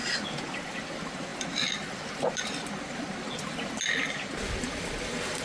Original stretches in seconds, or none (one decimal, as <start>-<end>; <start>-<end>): 0.0-5.4